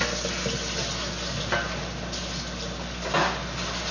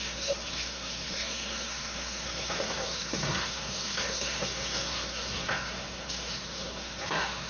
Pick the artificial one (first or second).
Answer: second